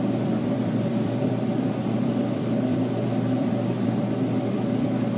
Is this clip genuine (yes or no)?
no